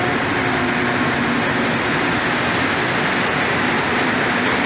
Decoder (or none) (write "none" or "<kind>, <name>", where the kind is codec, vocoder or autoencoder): none